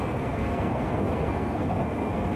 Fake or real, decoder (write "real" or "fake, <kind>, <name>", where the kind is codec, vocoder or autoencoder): fake, codec, SNAC